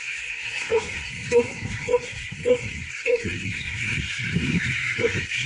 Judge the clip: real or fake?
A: fake